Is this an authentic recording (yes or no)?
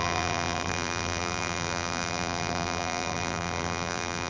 no